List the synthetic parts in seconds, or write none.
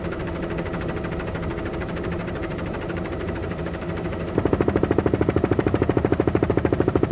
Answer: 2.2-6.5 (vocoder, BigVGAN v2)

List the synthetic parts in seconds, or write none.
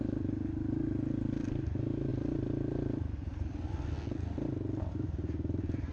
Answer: 2.1-3.9 (vocoder, BigVGAN v2)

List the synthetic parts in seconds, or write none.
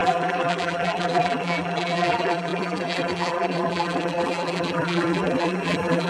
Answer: 0.0-6.1 (vocoder, BigVGAN v2)